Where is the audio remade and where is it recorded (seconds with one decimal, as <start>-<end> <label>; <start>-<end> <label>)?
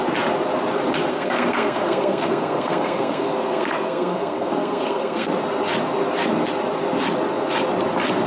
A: 0.0-1.1 recorded; 1.1-5.3 remade; 5.3-8.3 recorded